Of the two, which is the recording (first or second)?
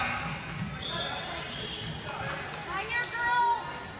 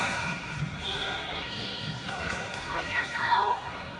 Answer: first